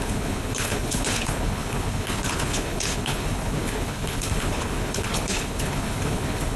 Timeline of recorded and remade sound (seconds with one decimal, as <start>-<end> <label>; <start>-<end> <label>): 0.0-6.6 remade